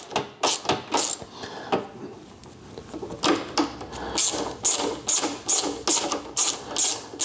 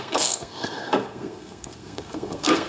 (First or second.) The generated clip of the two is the second